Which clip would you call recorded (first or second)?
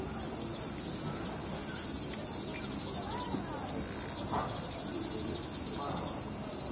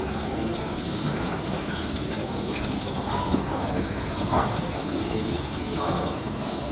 first